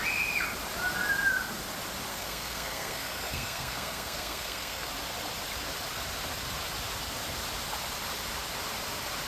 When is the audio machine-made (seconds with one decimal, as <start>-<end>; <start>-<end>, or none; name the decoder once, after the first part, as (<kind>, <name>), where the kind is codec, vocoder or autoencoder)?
2.1-4.9 (codec, SNAC)